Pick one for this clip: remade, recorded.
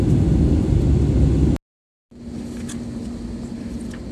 recorded